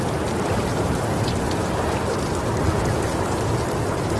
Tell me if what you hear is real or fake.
real